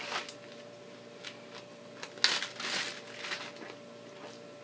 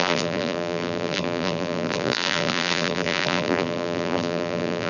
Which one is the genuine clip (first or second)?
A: first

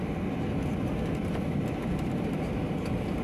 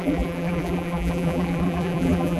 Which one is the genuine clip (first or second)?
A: first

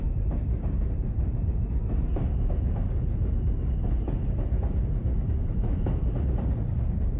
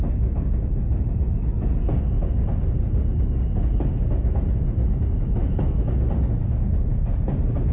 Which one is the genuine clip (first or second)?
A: second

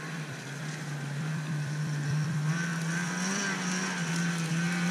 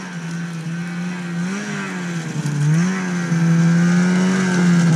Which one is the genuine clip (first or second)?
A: second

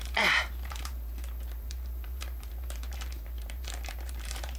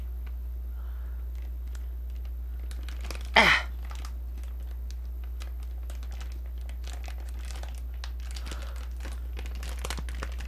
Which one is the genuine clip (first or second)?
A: second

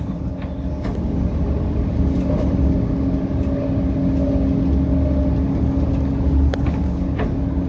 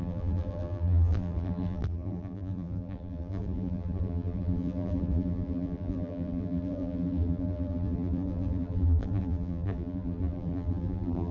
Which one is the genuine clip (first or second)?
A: first